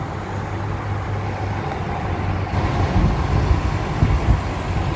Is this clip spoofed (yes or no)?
no